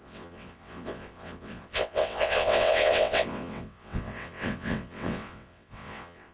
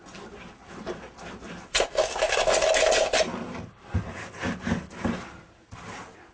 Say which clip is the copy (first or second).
first